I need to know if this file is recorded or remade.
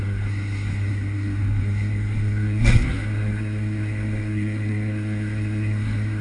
remade